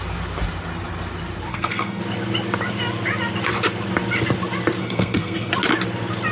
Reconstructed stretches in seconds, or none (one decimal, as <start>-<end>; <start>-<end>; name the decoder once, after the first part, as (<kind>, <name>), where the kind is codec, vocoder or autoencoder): 1.5-2.0 (codec, SNAC); 4.8-5.5